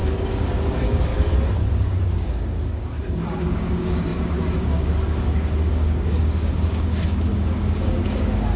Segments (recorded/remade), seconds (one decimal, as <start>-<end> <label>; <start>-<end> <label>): 0.0-1.1 remade; 1.1-1.7 recorded; 1.7-8.6 remade